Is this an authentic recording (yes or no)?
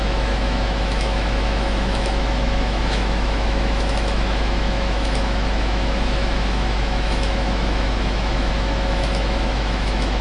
no